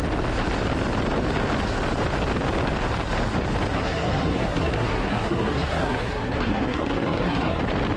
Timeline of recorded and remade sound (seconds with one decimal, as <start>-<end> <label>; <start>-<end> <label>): 0.0-3.7 recorded; 3.7-7.6 remade; 7.6-8.0 recorded